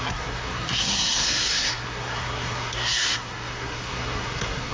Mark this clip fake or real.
fake